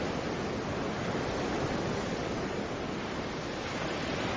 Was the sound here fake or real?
real